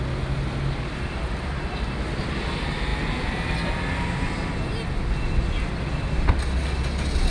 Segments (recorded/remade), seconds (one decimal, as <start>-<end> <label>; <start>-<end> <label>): 0.0-7.3 recorded